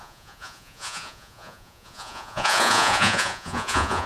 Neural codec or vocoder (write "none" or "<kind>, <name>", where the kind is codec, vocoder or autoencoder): vocoder, Vocos